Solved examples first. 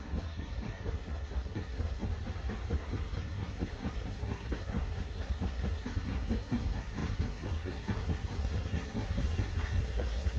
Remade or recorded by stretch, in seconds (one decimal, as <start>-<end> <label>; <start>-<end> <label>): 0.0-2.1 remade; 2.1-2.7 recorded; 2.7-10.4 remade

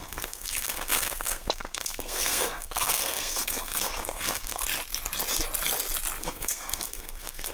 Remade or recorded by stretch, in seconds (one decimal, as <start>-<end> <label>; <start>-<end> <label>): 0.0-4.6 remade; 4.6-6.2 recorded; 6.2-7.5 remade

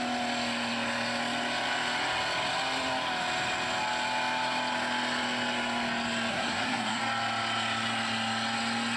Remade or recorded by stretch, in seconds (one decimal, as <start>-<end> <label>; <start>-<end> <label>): 0.0-6.3 recorded; 6.3-7.0 remade; 7.0-9.0 recorded

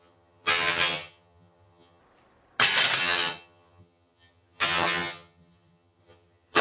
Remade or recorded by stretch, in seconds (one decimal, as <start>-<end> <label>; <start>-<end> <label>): 0.0-2.0 remade; 2.0-3.0 recorded; 3.0-6.6 remade

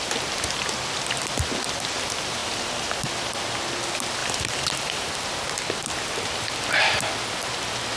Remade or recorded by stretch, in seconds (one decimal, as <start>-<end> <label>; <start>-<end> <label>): 0.0-2.4 recorded; 2.4-3.1 remade; 3.1-4.2 recorded; 4.2-5.1 remade; 5.1-8.0 recorded

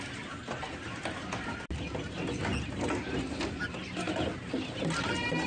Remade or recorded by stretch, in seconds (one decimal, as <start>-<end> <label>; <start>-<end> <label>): 0.0-5.5 recorded

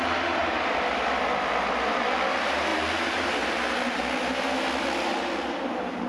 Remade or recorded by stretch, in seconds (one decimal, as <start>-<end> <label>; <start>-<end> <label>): 0.0-6.1 recorded

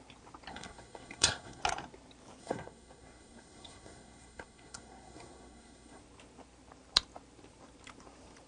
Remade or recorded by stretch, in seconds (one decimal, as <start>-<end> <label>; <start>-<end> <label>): 0.0-0.5 recorded; 0.5-1.6 remade; 1.6-2.4 recorded; 2.4-6.0 remade; 6.0-8.5 recorded